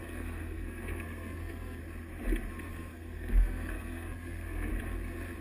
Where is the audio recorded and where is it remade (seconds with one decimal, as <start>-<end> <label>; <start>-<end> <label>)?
0.0-1.8 remade; 1.8-2.7 recorded; 2.7-4.7 remade; 4.7-5.4 recorded